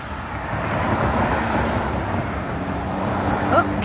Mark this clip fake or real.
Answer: real